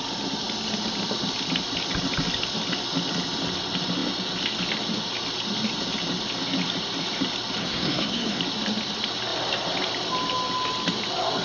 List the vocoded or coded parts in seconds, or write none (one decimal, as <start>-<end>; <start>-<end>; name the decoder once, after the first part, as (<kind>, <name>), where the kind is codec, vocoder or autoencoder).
7.6-8.4 (codec, SNAC)